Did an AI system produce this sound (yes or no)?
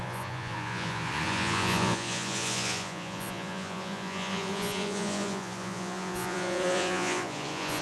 yes